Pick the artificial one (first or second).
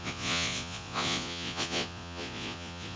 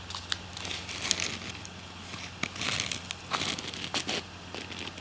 first